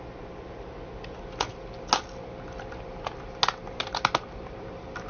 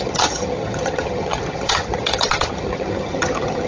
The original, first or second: first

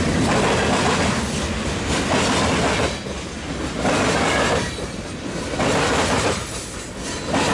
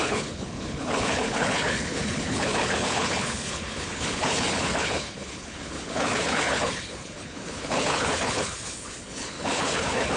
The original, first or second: first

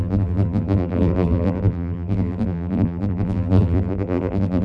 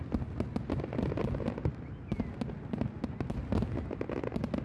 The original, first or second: second